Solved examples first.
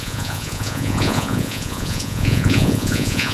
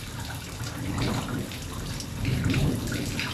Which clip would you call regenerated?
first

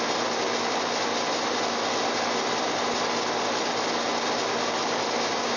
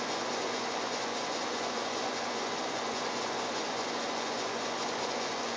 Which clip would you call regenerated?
second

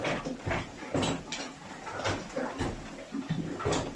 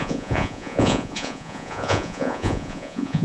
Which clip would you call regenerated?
second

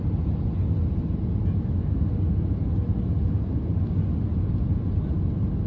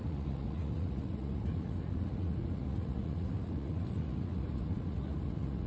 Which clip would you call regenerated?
second